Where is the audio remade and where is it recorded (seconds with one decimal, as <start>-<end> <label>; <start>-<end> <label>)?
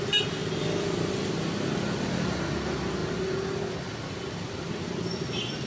0.0-5.7 recorded